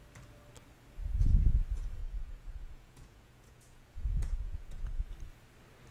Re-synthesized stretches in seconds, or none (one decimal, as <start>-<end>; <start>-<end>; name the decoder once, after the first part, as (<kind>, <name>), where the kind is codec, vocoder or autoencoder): 2.0-5.1 (vocoder, Vocos)